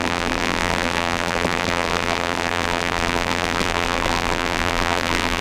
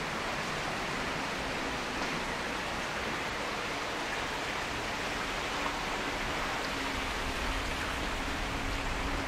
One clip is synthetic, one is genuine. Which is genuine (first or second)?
second